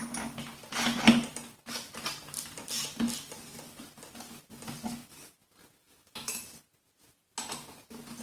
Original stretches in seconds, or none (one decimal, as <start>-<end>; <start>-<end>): 0.0-5.8; 6.4-8.2